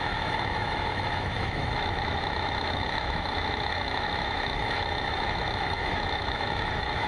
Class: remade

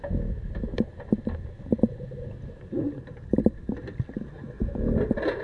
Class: recorded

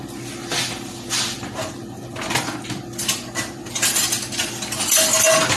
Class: recorded